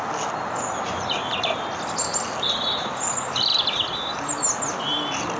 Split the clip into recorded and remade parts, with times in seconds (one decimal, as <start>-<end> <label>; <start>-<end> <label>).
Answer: 0.0-5.4 recorded